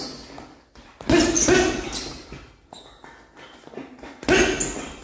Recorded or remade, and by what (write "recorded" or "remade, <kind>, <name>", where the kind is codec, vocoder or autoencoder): recorded